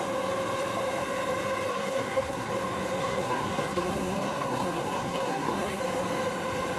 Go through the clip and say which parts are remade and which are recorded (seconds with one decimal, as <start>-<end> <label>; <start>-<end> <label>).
0.0-1.7 recorded; 1.7-2.5 remade; 2.5-3.0 recorded; 3.0-5.8 remade; 5.8-6.8 recorded